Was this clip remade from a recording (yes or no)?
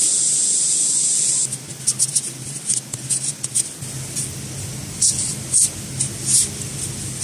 no